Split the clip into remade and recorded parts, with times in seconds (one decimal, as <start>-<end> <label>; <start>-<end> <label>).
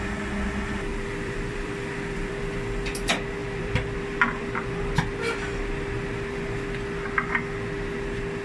0.0-0.9 recorded; 0.9-2.4 remade; 2.4-3.4 recorded; 3.4-4.7 remade; 4.7-8.4 recorded